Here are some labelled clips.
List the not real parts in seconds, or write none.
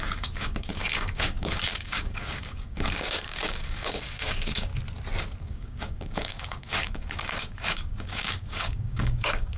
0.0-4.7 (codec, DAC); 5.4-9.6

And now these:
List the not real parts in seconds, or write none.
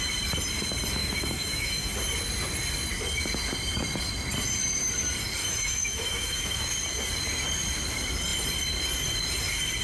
1.0-1.9 (autoencoder, DAC-VAE); 5.4-6.7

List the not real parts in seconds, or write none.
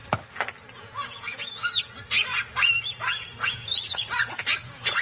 0.8-2.3 (vocoder, Vocos); 3.0-5.0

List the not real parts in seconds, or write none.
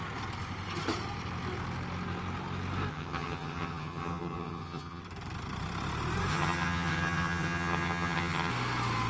2.9-5.0 (vocoder, HiFi-GAN); 6.3-8.5